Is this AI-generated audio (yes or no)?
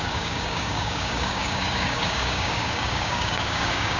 yes